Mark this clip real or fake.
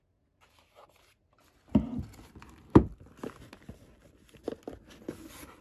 real